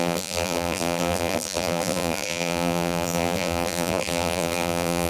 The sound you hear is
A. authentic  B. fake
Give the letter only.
B